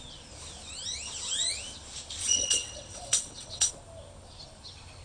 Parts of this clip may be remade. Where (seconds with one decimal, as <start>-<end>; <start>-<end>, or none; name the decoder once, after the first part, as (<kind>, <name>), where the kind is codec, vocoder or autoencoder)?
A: 2.2-3.7 (vocoder, WaveNeXt)